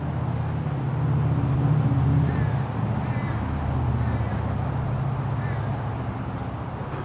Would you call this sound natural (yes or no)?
yes